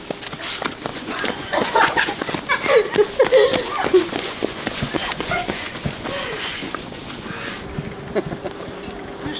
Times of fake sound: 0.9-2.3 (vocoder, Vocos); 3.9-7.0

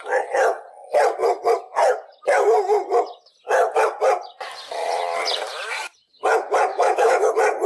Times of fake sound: 6.7-7.3 (codec, DAC)